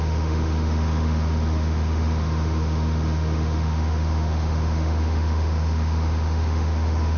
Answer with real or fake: fake